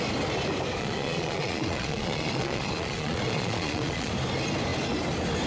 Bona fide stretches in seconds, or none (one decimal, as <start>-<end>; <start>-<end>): 0.0-0.8; 4.1-5.5